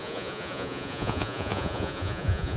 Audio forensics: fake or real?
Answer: fake